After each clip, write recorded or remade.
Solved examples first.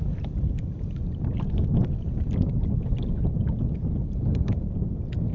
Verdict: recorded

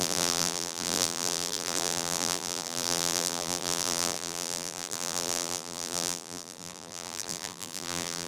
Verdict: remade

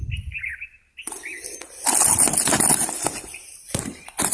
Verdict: recorded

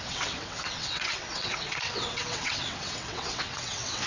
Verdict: remade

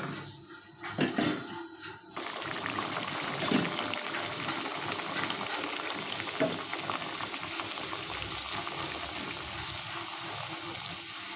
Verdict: recorded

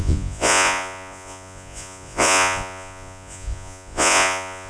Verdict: remade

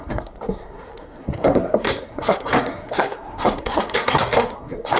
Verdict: remade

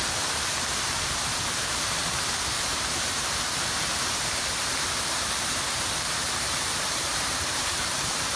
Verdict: remade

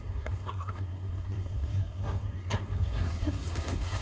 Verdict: remade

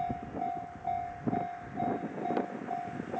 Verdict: recorded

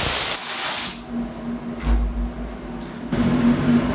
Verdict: recorded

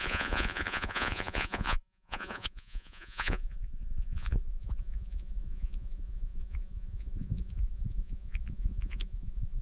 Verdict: remade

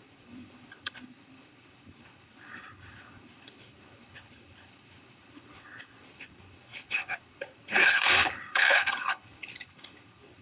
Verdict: remade